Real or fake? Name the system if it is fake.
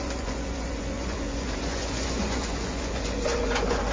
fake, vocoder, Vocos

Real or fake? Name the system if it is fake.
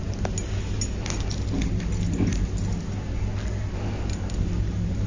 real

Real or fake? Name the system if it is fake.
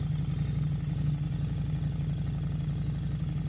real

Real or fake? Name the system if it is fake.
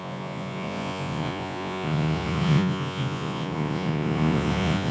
fake, vocoder, Vocos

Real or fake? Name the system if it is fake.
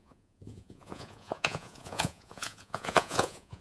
fake, vocoder, Vocos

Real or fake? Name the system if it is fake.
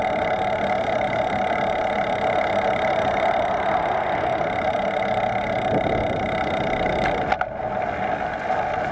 real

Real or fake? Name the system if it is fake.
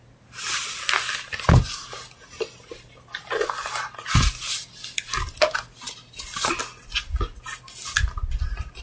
real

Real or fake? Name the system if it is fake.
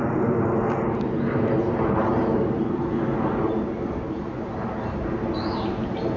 real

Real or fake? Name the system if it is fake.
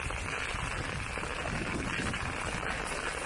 real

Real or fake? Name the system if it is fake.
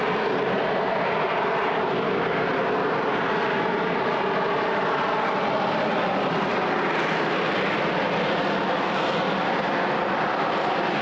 real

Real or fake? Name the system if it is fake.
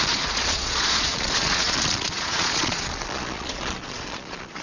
fake, vocoder, Vocos